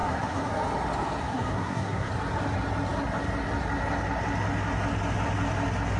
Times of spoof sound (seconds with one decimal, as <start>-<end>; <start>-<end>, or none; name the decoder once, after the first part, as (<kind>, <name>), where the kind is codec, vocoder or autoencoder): 0.0-0.5 (codec, SNAC); 1.2-2.1